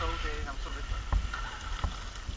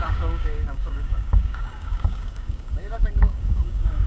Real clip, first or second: first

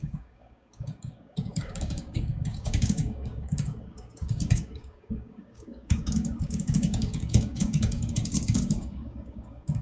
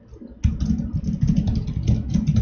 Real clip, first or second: second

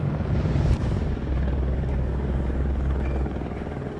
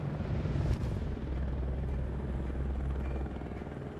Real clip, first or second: second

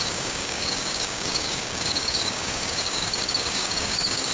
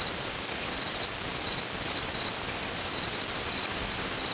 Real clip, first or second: second